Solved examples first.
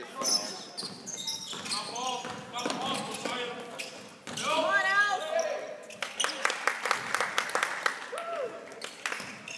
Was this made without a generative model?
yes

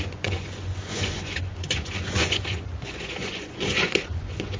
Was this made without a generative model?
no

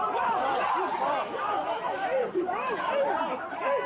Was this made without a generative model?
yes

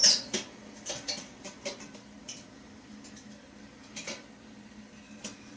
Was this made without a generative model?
no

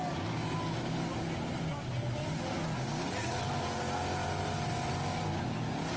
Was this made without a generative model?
yes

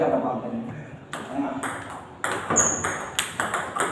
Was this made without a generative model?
yes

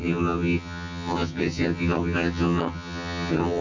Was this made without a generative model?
no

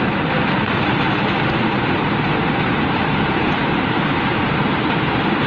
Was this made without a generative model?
no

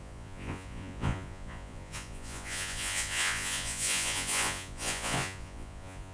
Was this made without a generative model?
no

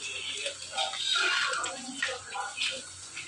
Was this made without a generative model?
no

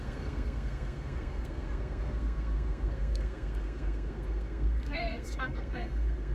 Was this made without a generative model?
no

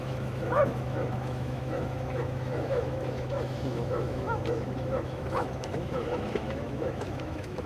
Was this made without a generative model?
no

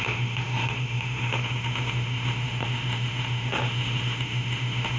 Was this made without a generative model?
no